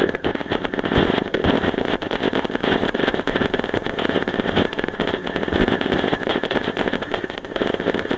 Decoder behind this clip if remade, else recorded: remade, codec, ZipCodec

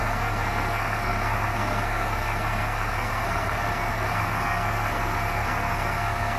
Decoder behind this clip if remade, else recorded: remade, codec, SNAC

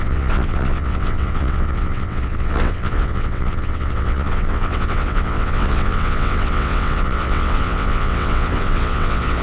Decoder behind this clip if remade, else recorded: remade, vocoder, WaveNeXt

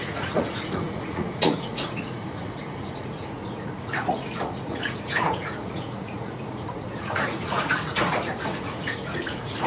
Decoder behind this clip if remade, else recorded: remade, vocoder, Vocos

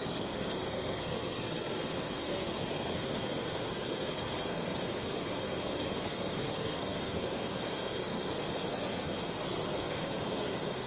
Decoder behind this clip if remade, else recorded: remade, codec, SNAC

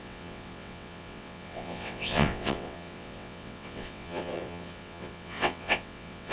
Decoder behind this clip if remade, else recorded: remade, vocoder, WaveNeXt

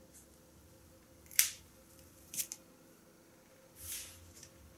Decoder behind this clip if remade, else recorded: recorded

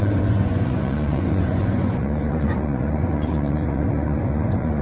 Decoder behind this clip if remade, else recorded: remade, vocoder, Vocos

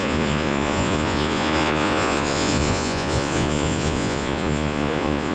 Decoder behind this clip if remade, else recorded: remade, vocoder, Vocos